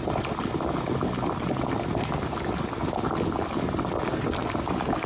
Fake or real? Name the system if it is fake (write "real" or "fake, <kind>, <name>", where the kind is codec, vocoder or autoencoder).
real